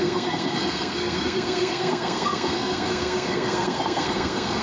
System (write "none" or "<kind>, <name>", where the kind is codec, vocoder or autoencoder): codec, SNAC